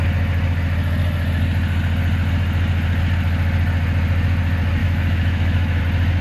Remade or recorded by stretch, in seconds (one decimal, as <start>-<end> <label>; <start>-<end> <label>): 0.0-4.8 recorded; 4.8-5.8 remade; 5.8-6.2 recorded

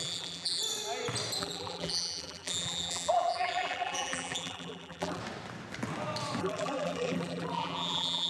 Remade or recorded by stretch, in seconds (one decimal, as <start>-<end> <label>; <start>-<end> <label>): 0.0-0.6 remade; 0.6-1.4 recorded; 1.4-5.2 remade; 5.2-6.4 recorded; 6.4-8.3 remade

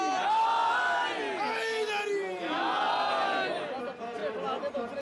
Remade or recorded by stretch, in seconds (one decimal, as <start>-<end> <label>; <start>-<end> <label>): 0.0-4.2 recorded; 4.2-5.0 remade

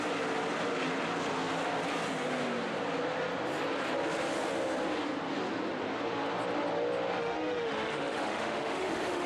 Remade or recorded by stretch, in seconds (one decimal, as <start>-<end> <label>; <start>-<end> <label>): 0.0-7.2 recorded; 7.2-9.3 remade

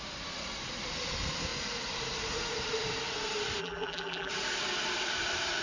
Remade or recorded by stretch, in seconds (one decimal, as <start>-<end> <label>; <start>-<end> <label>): 0.0-3.6 recorded; 3.6-4.3 remade; 4.3-5.6 recorded

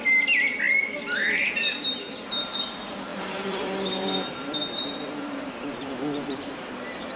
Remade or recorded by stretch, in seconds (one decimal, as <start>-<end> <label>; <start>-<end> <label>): 0.0-1.0 recorded; 1.0-7.2 remade

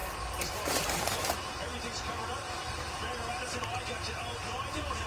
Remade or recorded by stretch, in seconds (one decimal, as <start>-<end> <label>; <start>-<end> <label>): 0.0-1.7 remade; 1.7-3.3 recorded; 3.3-5.1 remade

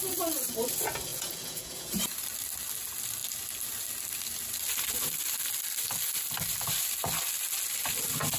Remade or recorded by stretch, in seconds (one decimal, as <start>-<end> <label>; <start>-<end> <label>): 0.0-1.1 recorded; 1.1-1.9 remade; 1.9-8.4 recorded